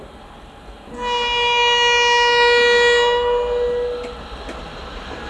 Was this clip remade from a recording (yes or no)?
no